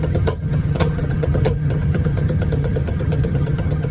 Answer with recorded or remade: remade